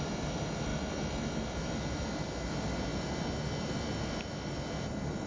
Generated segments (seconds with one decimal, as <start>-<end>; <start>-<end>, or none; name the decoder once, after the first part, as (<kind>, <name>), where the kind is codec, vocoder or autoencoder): none